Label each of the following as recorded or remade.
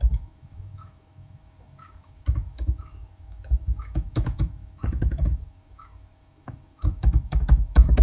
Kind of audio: remade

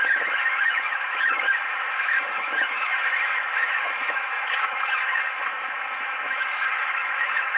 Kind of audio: remade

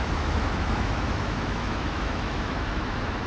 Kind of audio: remade